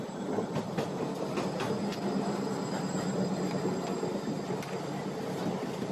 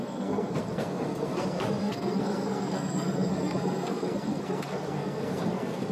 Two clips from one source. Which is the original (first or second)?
first